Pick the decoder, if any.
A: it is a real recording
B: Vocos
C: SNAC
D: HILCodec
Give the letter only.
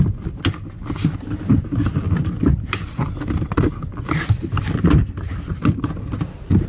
A